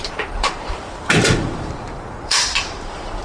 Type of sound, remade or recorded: remade